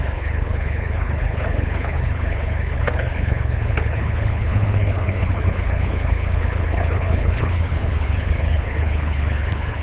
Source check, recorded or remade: remade